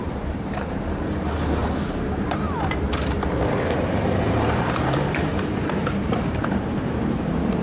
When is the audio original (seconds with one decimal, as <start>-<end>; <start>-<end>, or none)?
none